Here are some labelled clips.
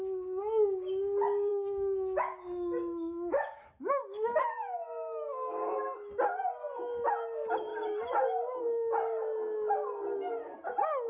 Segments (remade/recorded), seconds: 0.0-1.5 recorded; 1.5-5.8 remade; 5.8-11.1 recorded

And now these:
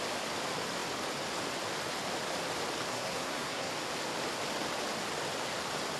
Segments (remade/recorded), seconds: 0.0-2.9 recorded; 2.9-3.7 remade; 3.7-6.0 recorded

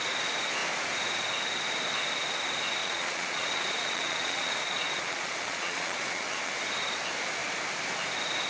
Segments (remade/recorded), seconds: 0.0-2.8 recorded; 2.8-6.5 remade; 6.5-8.5 recorded

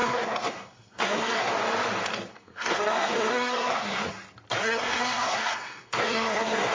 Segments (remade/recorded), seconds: 0.0-1.5 remade; 1.5-2.3 recorded; 2.3-4.1 remade; 4.1-4.6 recorded; 4.6-6.7 remade